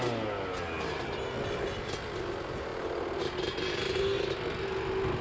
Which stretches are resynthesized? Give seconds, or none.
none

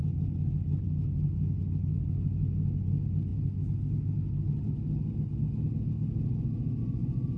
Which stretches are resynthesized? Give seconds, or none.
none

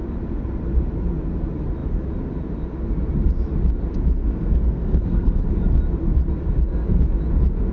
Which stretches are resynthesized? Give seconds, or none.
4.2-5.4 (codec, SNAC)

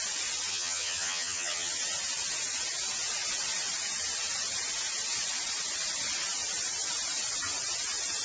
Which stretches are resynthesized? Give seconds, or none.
0.5-1.7 (vocoder, HiFi-GAN)

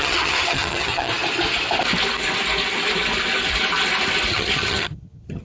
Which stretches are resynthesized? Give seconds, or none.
0.0-1.1 (vocoder, HiFi-GAN); 4.3-5.4

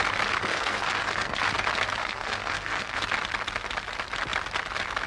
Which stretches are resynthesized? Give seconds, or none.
0.4-1.4 (codec, SNAC); 2.0-3.0

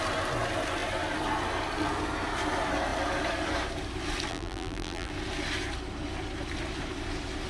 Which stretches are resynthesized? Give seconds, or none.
4.3-5.1 (vocoder, BigVGAN v2)

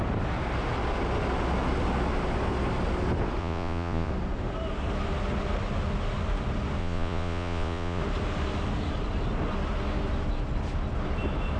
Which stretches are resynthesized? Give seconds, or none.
3.4-4.1 (vocoder, Vocos); 6.8-8.0